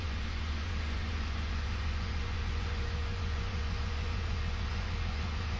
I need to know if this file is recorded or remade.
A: remade